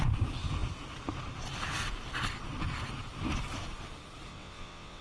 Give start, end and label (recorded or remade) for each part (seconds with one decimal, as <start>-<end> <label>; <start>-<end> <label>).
0.0-4.3 recorded; 4.3-5.0 remade